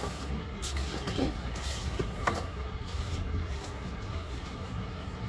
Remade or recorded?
remade